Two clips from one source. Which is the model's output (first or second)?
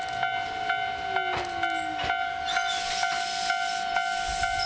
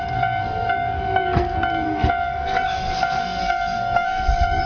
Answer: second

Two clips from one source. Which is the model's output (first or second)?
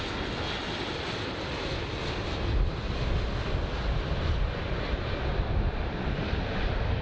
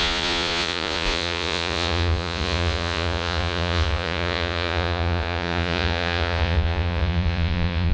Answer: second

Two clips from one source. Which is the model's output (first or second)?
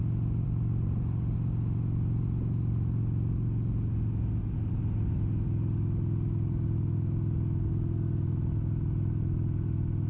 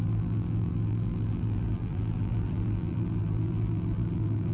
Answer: second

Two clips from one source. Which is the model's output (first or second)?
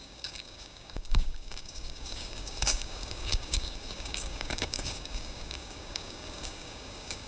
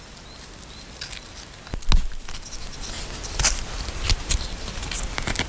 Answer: first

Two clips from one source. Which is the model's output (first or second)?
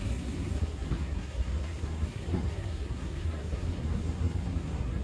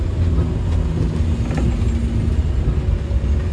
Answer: first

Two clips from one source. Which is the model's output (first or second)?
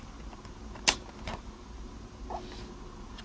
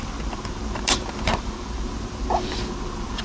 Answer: second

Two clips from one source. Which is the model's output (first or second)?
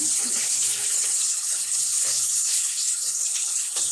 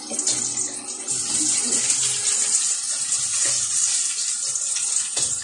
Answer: first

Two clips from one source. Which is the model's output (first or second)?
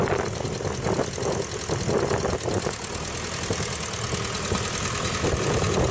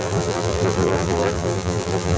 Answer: second